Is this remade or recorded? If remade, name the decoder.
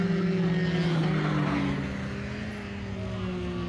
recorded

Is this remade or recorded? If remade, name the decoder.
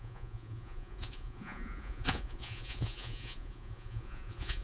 remade, vocoder, Vocos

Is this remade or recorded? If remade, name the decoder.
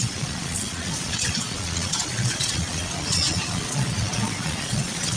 remade, vocoder, Vocos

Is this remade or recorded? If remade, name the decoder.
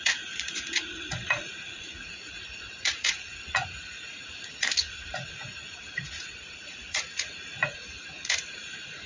remade, vocoder, Vocos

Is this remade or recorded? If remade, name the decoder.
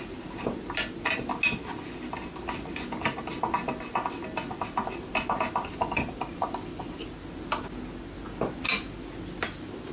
recorded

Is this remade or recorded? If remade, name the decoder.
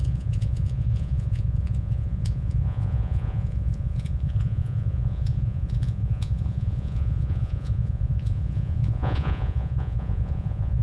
remade, vocoder, Vocos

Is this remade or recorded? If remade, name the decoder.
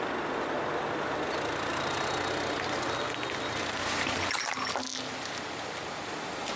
recorded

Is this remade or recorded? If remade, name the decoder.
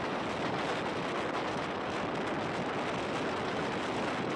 recorded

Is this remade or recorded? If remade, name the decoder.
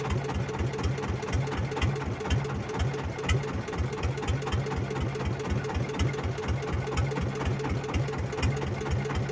recorded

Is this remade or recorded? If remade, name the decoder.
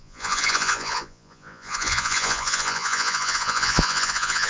remade, vocoder, Vocos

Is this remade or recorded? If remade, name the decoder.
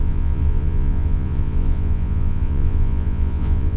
remade, vocoder, Vocos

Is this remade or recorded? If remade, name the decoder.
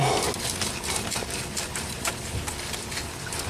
recorded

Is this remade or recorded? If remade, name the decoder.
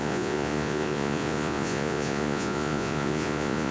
remade, vocoder, Vocos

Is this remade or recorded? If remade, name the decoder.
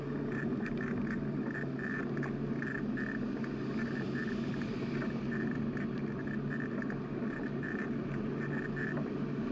recorded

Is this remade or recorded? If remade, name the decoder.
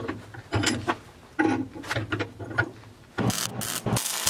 recorded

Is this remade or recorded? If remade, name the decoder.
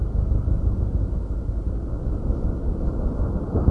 recorded